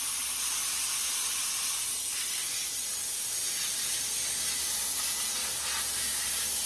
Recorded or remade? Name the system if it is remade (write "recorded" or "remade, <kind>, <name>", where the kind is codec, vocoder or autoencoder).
recorded